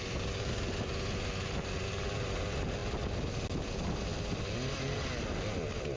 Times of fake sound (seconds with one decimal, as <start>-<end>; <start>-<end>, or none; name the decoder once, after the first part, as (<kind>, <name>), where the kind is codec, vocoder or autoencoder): none